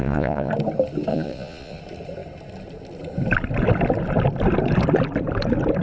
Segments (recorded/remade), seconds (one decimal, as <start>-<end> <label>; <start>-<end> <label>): 0.0-0.5 remade; 0.5-1.1 recorded; 1.1-1.8 remade; 1.8-5.8 recorded